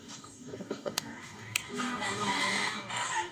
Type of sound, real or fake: fake